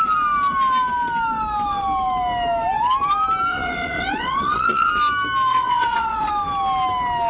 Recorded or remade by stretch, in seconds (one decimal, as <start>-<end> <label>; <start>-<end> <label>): 0.0-3.5 recorded; 3.5-4.9 remade; 4.9-5.5 recorded; 5.5-6.3 remade; 6.3-7.3 recorded